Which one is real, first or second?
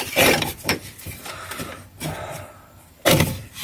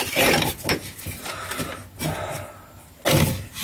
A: second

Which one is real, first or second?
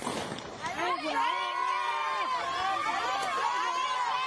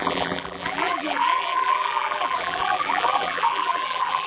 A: first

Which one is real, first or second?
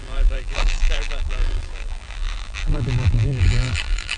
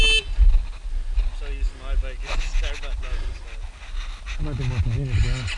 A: second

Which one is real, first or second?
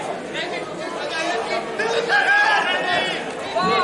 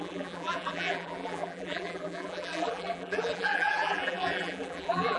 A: first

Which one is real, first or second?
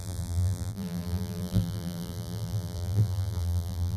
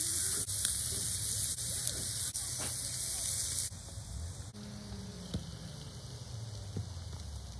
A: second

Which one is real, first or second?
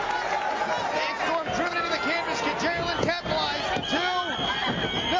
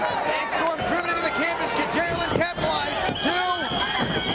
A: first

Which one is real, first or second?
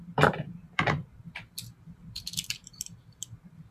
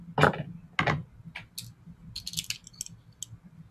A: second